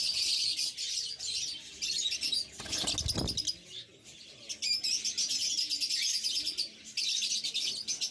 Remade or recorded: recorded